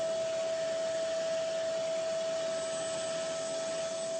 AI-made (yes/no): no